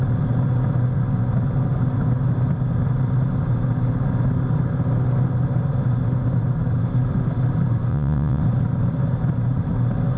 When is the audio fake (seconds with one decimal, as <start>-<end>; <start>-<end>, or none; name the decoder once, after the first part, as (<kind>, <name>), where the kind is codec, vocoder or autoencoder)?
7.9-8.4 (vocoder, Vocos)